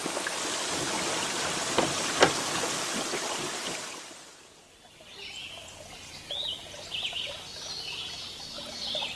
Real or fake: real